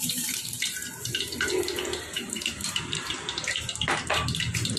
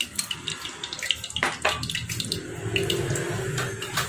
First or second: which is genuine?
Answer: second